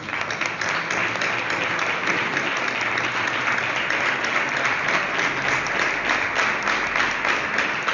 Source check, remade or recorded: recorded